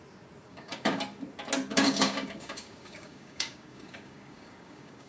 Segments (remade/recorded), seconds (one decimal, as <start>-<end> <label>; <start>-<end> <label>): 0.0-0.5 recorded; 0.5-1.0 remade; 1.0-1.7 recorded; 1.7-5.1 remade